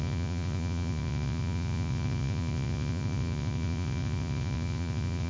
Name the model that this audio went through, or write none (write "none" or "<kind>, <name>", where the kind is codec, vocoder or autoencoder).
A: vocoder, Vocos